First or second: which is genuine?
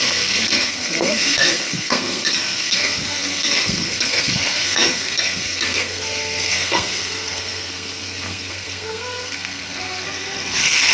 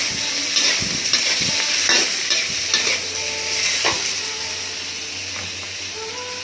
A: second